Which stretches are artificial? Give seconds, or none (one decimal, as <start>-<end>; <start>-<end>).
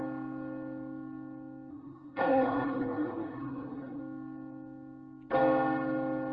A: 1.7-4.0